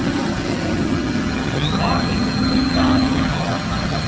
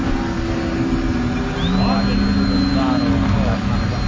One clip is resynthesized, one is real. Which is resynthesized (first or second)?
first